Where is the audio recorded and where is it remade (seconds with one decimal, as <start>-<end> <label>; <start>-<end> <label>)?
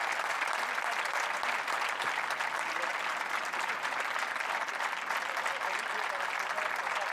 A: 0.0-7.1 recorded